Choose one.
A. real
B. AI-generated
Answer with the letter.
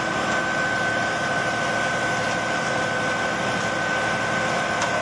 A